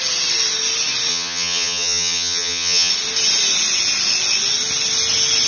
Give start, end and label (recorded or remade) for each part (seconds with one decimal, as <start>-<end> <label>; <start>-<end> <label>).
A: 0.0-1.1 recorded; 1.1-2.9 remade; 2.9-5.5 recorded